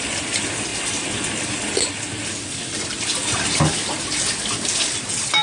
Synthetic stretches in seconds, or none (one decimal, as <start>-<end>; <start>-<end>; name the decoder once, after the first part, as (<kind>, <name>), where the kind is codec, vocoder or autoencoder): none